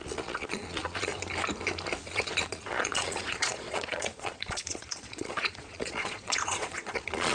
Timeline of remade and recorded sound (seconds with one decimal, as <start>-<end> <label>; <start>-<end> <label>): 0.0-1.1 remade; 1.1-2.0 recorded; 2.0-7.3 remade

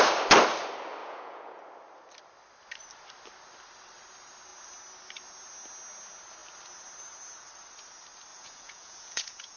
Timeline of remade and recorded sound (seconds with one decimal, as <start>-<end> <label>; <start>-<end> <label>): 0.0-1.0 recorded; 1.0-1.6 remade; 1.6-8.3 recorded; 8.3-9.6 remade

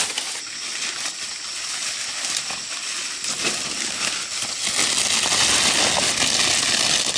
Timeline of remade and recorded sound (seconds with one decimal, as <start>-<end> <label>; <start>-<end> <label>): 0.0-7.2 recorded

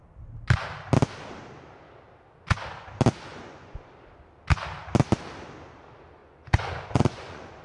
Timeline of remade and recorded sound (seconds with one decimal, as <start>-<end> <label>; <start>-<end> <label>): 0.0-3.3 recorded; 3.3-3.9 remade; 3.9-6.2 recorded; 6.2-7.6 remade

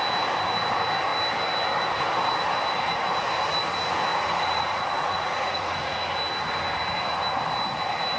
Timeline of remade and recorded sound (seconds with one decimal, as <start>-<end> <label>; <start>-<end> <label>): 0.0-4.1 recorded; 4.1-6.0 remade; 6.0-8.2 recorded

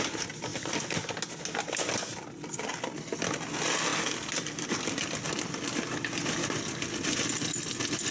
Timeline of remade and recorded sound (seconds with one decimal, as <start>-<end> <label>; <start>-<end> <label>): 0.0-8.1 recorded